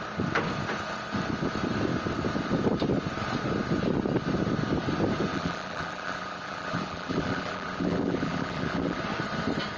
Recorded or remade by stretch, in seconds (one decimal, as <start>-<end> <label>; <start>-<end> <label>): 0.0-5.3 recorded; 5.3-9.0 remade; 9.0-9.8 recorded